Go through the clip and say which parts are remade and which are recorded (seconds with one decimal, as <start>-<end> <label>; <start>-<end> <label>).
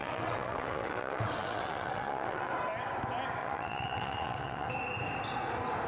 0.0-2.5 remade; 2.5-3.4 recorded; 3.4-4.7 remade; 4.7-5.9 recorded